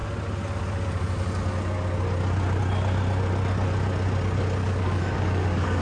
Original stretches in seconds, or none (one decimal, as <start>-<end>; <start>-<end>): 0.0-4.6